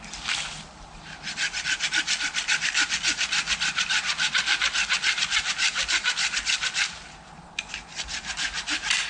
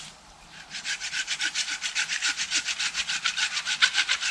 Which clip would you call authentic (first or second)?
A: first